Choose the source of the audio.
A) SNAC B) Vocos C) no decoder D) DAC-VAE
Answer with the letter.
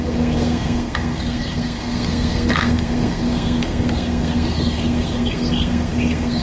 A